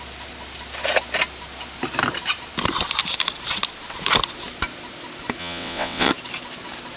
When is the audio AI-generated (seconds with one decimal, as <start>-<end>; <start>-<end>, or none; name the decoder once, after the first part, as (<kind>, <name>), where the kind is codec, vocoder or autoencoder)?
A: 5.4-6.1 (vocoder, WaveNeXt)